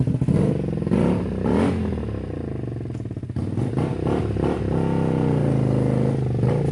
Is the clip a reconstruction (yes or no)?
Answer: no